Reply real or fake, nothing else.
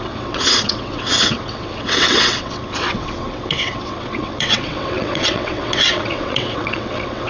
fake